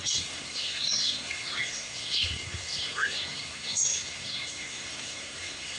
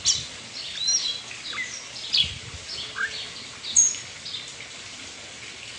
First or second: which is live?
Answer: second